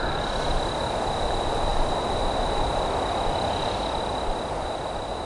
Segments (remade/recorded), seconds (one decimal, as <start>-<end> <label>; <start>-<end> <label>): 0.0-5.3 recorded